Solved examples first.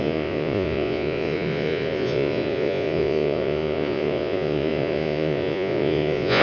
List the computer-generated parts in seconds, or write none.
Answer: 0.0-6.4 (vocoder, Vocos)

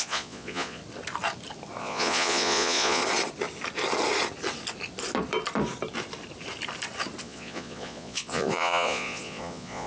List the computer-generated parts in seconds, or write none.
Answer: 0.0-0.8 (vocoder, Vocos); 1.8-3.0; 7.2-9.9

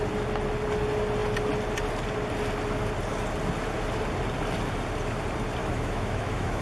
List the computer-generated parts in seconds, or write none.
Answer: 5.6-6.6 (autoencoder, DAC-VAE)

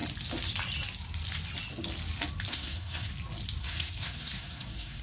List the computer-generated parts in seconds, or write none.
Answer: 2.5-3.1 (codec, SNAC); 3.6-5.0

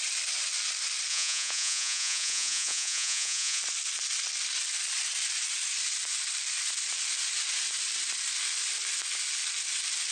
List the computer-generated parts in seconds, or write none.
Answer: 1.1-3.6 (vocoder, Vocos)

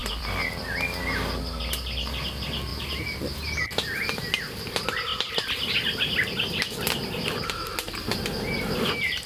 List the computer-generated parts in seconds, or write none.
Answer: 0.0-0.6 (vocoder, BigVGAN v2); 2.7-3.6; 5.1-5.7

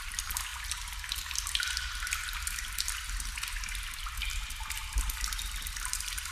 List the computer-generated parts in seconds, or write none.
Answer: none

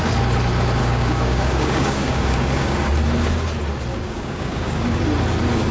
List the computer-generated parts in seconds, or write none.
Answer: 0.8-2.9 (codec, DAC); 3.9-5.0